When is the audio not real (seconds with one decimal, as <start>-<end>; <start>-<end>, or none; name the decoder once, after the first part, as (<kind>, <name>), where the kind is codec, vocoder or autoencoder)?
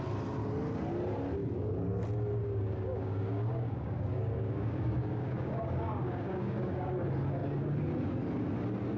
2.4-6.9 (codec, DAC)